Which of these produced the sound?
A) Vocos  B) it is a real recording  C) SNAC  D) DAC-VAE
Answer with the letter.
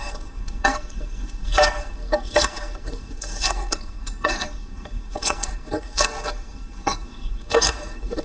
C